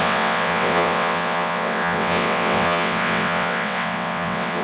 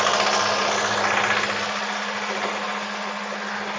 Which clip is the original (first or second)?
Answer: second